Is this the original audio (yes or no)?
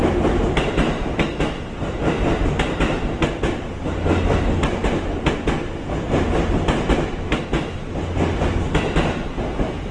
yes